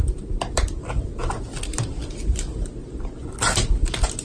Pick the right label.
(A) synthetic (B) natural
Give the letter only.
B